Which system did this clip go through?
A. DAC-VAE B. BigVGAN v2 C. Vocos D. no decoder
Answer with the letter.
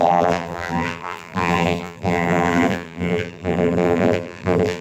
B